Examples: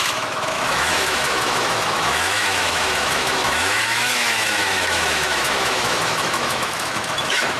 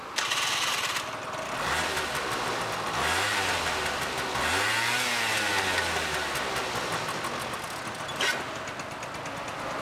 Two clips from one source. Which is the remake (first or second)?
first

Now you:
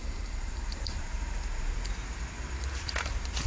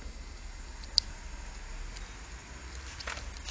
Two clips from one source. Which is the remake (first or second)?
first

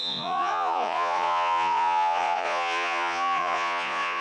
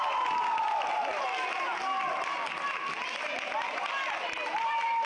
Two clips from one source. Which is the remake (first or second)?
first